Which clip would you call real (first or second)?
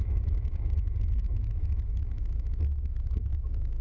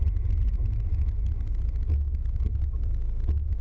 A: second